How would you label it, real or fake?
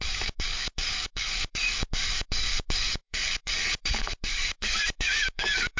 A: fake